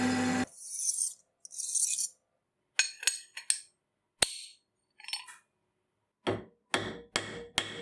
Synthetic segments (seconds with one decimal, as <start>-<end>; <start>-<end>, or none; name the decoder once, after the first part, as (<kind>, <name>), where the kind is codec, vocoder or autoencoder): none